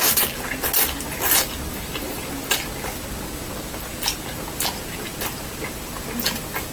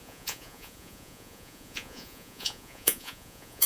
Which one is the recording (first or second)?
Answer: first